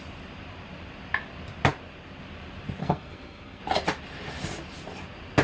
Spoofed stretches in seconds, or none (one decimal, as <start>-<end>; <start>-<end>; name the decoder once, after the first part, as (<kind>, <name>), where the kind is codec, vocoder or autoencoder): 2.8-3.6 (codec, SNAC)